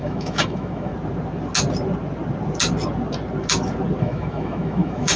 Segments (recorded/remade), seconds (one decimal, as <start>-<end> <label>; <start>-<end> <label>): 0.0-0.9 remade; 0.9-4.0 recorded; 4.0-5.2 remade